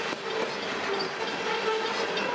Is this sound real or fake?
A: real